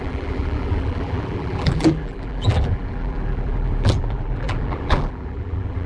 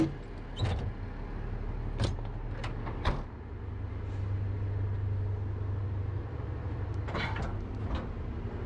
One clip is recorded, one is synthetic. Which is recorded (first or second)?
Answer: second